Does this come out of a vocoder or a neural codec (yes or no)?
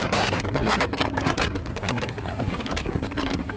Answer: yes